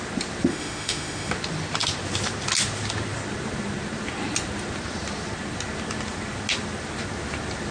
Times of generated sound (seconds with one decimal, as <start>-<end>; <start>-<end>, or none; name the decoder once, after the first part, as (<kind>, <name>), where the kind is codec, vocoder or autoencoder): 0.5-1.3 (autoencoder, DAC-VAE)